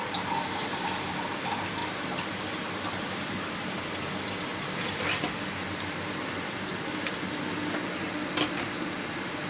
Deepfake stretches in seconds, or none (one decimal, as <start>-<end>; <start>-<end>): 1.8-3.8